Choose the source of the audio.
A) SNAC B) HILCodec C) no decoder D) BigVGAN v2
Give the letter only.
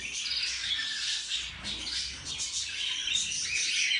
C